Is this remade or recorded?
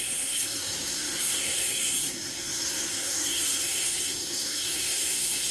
remade